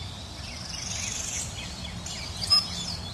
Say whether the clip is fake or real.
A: real